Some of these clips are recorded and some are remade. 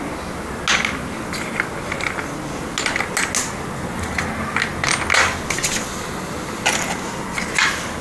recorded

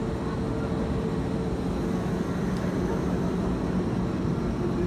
recorded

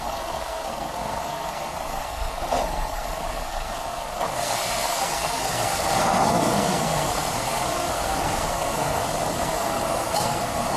remade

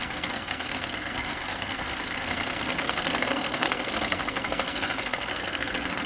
remade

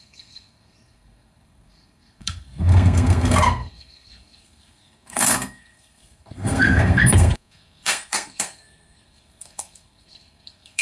remade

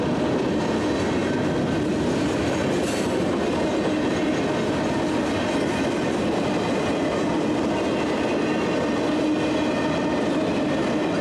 recorded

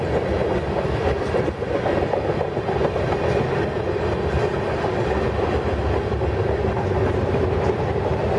recorded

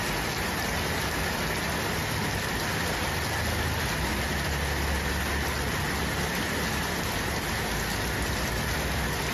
recorded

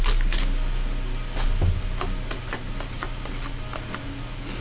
recorded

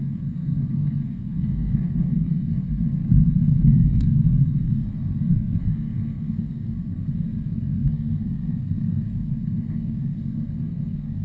remade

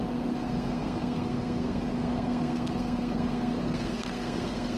remade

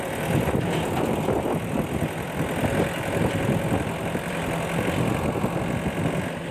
recorded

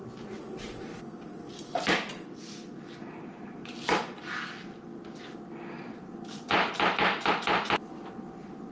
recorded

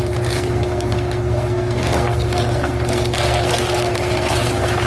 remade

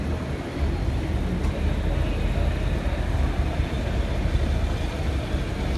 recorded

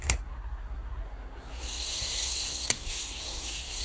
remade